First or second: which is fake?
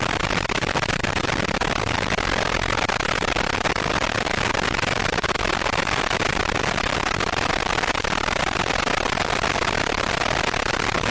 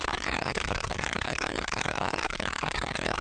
second